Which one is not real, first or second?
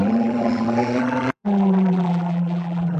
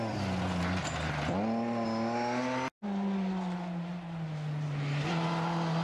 first